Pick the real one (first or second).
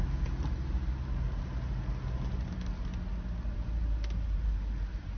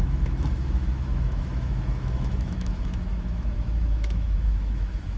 first